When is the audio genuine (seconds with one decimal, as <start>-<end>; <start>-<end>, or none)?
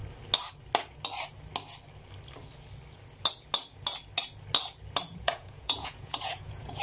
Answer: 0.0-5.1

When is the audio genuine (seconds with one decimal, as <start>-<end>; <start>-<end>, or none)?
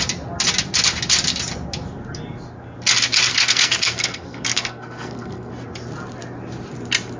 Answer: 0.0-3.3; 5.5-7.2